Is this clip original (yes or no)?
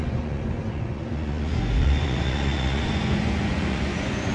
no